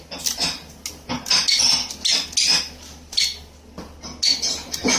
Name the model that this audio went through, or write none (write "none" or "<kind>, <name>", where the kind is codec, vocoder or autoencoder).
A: none